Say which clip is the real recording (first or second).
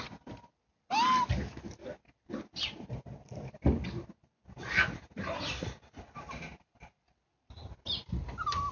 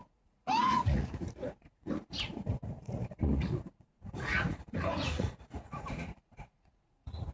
first